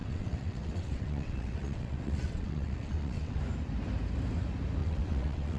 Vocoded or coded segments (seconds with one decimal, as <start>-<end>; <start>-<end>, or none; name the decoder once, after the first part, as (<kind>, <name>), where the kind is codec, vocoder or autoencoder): 0.0-3.4 (vocoder, WaveNeXt); 4.8-5.6